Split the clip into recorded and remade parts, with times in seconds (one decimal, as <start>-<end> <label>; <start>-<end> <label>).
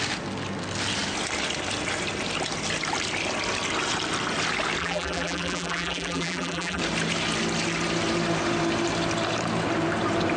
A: 0.0-4.8 recorded; 4.8-6.8 remade; 6.8-10.4 recorded